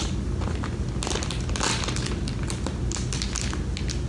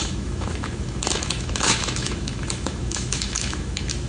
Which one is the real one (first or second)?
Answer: first